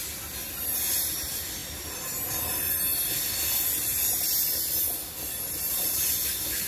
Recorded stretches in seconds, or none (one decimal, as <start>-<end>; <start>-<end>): 0.0-5.7